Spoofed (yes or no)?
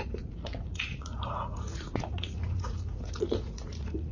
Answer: yes